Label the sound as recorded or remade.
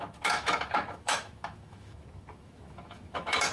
remade